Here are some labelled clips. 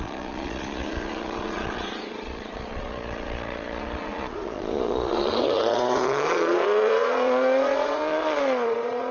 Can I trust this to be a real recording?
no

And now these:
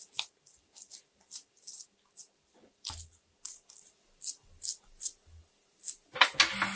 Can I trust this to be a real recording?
yes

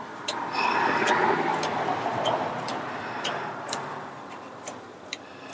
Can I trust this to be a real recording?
no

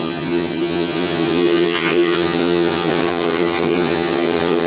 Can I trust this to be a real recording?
no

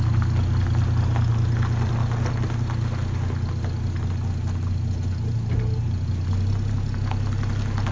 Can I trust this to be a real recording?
yes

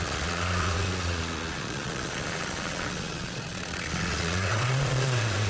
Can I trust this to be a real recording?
no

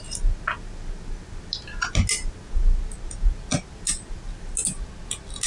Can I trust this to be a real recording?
yes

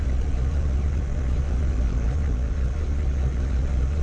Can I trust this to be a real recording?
no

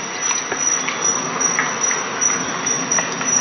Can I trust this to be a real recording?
yes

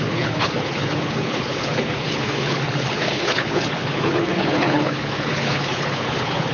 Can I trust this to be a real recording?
no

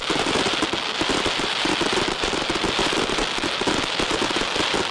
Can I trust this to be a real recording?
yes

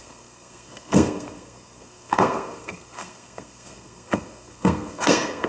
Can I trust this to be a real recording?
no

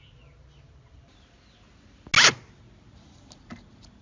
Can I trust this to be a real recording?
yes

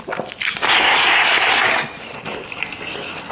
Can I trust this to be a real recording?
yes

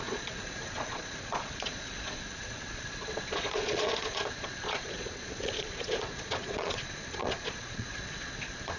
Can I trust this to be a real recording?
no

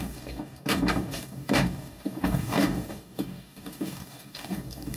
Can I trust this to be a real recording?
no